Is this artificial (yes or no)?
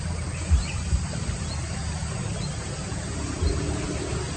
no